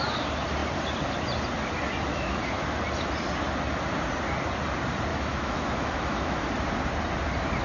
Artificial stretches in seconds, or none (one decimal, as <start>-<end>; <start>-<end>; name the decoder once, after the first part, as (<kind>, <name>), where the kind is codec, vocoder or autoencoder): 2.1-2.8 (autoencoder, DAC-VAE); 5.1-6.4